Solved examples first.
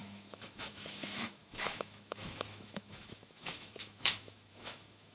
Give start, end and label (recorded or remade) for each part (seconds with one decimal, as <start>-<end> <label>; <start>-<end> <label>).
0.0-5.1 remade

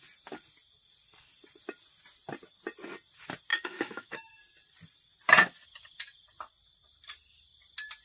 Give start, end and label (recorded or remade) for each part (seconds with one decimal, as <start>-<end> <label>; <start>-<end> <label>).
0.0-3.5 recorded; 3.5-4.4 remade; 4.4-8.0 recorded

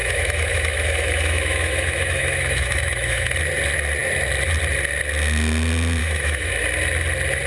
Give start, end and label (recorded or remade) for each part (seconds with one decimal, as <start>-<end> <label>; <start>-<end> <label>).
0.0-3.3 remade; 3.3-6.0 recorded; 6.0-6.5 remade; 6.5-7.5 recorded